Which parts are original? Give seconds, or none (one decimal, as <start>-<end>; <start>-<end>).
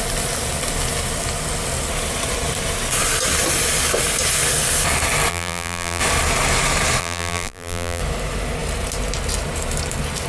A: 0.0-5.3; 6.0-7.0; 8.0-10.3